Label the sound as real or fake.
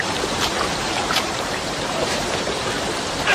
fake